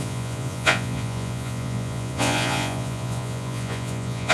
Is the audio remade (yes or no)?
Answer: yes